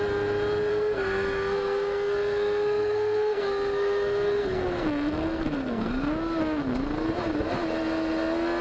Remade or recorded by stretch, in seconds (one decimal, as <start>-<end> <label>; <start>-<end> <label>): 0.0-0.7 recorded; 0.7-5.9 remade; 5.9-8.6 recorded